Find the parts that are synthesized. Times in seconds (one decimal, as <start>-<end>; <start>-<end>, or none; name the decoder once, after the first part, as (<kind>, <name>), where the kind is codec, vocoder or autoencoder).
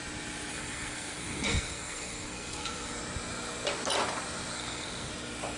0.5-3.0 (codec, SNAC); 4.5-5.1